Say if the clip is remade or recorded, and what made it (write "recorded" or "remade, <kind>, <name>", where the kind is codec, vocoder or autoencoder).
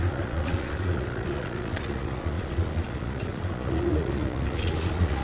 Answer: remade, vocoder, Vocos